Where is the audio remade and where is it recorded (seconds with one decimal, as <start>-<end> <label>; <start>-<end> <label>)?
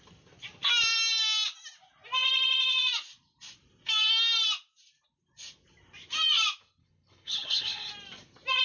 0.0-6.8 recorded; 6.8-7.9 remade; 7.9-8.6 recorded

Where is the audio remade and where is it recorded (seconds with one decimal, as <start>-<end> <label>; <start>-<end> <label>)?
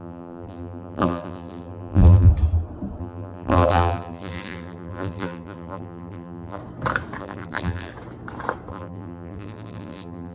0.0-2.3 remade; 2.3-3.0 recorded; 3.0-6.6 remade; 6.6-7.2 recorded; 7.2-7.9 remade; 7.9-8.7 recorded; 8.7-10.3 remade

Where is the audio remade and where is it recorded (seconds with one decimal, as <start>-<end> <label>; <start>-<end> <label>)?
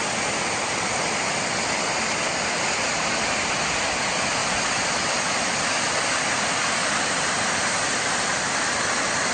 0.0-4.4 recorded; 4.4-5.4 remade; 5.4-9.3 recorded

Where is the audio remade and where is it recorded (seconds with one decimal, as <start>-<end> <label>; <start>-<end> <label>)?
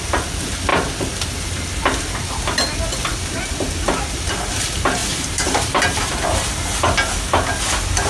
0.0-5.0 recorded; 5.0-6.6 remade; 6.6-8.1 recorded